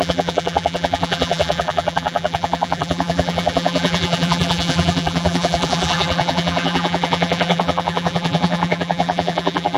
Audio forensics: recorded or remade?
remade